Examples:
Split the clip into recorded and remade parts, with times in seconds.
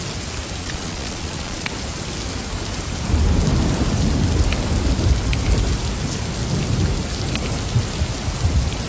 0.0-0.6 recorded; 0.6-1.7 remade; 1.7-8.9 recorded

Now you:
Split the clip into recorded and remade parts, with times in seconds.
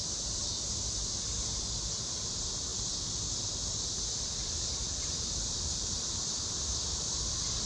0.0-4.8 recorded; 4.8-6.3 remade; 6.3-7.7 recorded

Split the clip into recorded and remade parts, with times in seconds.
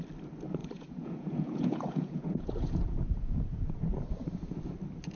0.0-0.6 recorded; 0.6-3.7 remade; 3.7-5.2 recorded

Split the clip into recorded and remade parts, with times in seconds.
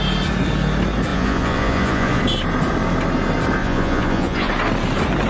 0.0-1.1 recorded; 1.1-2.2 remade; 2.2-3.6 recorded; 3.6-4.5 remade; 4.5-5.3 recorded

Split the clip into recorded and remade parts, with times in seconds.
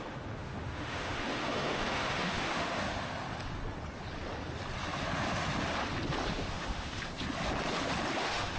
0.0-2.8 remade; 2.8-6.5 recorded; 6.5-7.1 remade; 7.1-8.2 recorded; 8.2-8.6 remade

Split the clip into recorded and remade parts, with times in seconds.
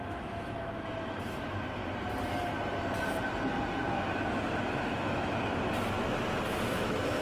0.0-1.8 remade; 1.8-4.7 recorded; 4.7-5.5 remade; 5.5-6.7 recorded; 6.7-7.2 remade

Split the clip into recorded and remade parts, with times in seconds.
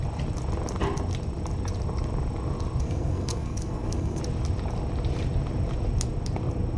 0.0-2.8 recorded; 2.8-4.2 remade; 4.2-6.8 recorded